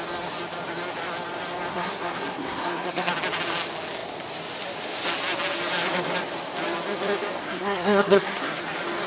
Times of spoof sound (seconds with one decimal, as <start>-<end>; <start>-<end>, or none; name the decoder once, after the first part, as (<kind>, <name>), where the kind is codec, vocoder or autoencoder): 1.7-3.1 (codec, SNAC); 7.4-8.6